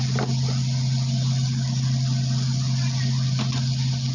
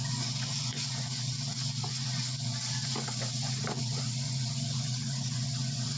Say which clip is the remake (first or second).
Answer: second